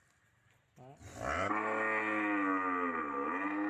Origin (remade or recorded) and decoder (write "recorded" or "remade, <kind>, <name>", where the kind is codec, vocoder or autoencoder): recorded